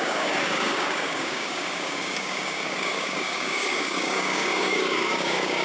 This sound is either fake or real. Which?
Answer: fake